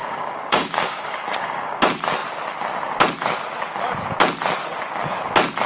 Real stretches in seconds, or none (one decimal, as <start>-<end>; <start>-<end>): 1.8-5.7